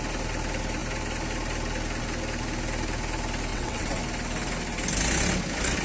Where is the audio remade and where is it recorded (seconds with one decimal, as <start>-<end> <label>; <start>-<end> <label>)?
0.0-3.5 recorded; 3.5-4.0 remade; 4.0-5.8 recorded